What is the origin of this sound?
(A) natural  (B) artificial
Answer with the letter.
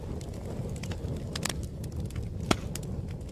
A